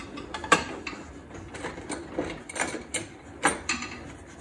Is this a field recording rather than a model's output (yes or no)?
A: yes